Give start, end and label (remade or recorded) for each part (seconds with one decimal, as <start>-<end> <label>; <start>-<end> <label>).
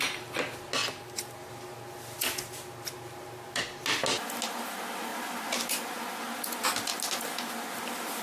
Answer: 0.0-0.8 recorded; 0.8-1.5 remade; 1.5-8.2 recorded